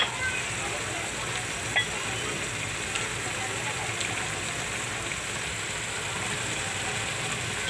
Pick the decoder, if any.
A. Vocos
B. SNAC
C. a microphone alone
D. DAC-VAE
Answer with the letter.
C